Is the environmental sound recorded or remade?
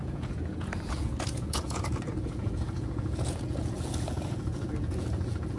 remade